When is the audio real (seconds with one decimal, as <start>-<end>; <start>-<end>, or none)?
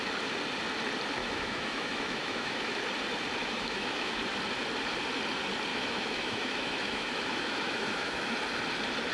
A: 0.0-1.2; 2.8-3.4; 4.2-5.7; 8.3-9.1